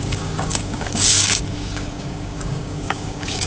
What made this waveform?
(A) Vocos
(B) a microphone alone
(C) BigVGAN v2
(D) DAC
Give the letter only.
D